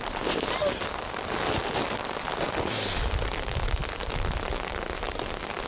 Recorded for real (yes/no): yes